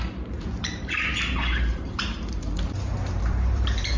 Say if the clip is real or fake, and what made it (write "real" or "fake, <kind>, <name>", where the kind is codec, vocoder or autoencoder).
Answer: fake, vocoder, BigVGAN v2